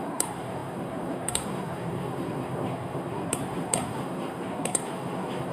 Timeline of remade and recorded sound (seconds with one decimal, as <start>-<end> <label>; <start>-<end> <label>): 0.0-5.5 remade